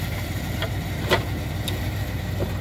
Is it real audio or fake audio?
fake